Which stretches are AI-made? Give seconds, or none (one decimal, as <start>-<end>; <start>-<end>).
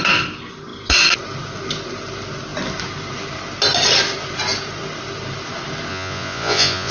5.9-6.9